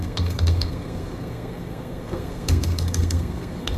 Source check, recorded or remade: remade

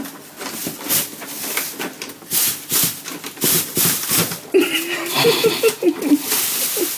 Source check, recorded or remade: recorded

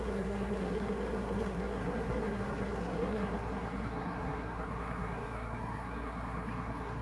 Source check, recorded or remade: remade